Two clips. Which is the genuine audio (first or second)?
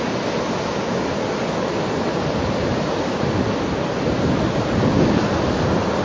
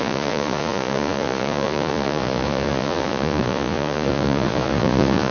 first